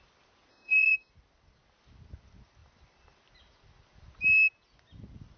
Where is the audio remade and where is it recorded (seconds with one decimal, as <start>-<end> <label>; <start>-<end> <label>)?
0.0-0.5 recorded; 0.5-1.1 remade; 1.1-5.4 recorded

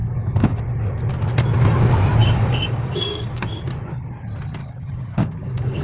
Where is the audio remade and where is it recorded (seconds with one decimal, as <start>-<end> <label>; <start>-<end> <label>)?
0.0-0.6 remade; 0.6-2.2 recorded; 2.2-3.5 remade; 3.5-4.6 recorded; 4.6-5.8 remade